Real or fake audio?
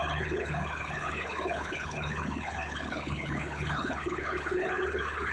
fake